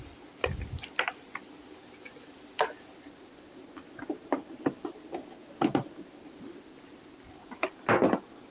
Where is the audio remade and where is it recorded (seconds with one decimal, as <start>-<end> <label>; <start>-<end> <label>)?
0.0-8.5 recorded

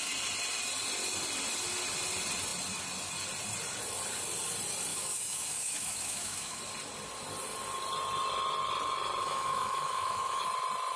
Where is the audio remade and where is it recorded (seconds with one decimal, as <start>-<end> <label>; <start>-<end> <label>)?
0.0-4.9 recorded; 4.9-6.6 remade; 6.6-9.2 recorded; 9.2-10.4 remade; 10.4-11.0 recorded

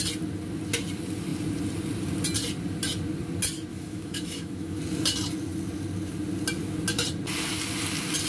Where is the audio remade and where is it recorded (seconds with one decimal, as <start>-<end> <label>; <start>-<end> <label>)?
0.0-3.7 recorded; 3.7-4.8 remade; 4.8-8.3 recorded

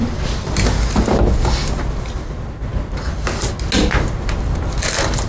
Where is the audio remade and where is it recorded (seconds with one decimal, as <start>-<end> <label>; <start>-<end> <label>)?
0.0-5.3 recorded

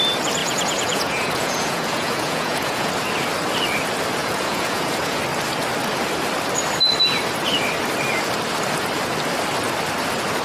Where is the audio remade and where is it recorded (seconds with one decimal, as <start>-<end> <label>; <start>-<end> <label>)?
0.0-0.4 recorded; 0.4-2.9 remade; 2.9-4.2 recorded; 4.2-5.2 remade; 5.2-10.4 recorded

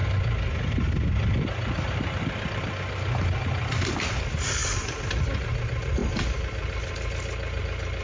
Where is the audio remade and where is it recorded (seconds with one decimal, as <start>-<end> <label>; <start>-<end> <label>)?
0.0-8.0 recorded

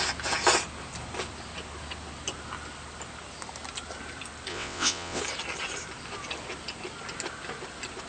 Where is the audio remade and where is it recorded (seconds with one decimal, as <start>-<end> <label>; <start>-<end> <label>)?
0.0-4.5 recorded; 4.5-5.2 remade; 5.2-8.1 recorded

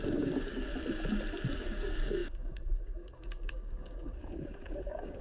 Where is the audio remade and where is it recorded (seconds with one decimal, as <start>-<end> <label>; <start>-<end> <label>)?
0.0-0.7 remade; 0.7-1.5 recorded; 1.5-5.2 remade